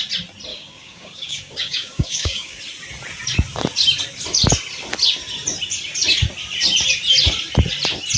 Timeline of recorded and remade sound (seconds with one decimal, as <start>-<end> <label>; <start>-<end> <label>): 0.0-0.5 recorded; 0.5-2.6 remade; 2.6-8.2 recorded